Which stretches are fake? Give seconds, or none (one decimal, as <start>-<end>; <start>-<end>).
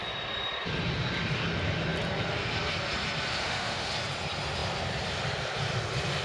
3.4-3.9